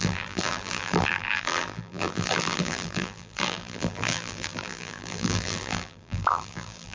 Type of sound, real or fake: fake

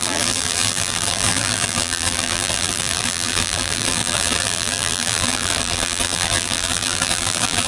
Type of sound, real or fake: fake